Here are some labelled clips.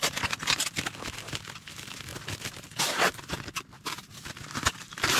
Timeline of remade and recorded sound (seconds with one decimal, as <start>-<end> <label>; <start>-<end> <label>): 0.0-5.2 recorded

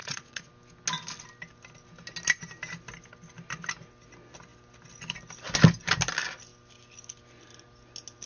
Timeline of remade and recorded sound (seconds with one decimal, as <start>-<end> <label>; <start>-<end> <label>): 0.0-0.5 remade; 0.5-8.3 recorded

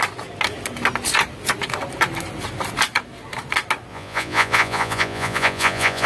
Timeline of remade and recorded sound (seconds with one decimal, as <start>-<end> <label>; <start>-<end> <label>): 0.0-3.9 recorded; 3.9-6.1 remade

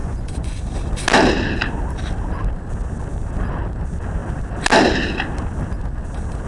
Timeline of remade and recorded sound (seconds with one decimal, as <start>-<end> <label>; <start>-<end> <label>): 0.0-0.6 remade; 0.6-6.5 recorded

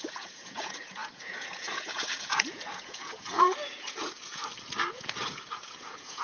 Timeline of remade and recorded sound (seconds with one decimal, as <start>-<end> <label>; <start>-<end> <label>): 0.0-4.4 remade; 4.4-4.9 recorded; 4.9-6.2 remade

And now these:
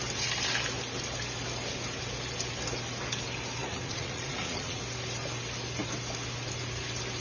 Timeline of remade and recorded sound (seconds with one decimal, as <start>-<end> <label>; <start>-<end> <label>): 0.0-3.6 recorded; 3.6-4.8 remade; 4.8-7.2 recorded

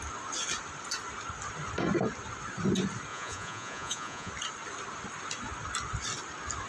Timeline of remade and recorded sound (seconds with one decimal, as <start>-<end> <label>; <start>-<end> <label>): 0.0-3.1 recorded; 3.1-4.3 remade; 4.3-6.7 recorded

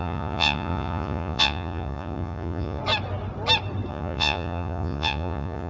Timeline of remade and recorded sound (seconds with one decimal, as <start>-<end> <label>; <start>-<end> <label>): 0.0-2.8 remade; 2.8-3.9 recorded; 3.9-5.7 remade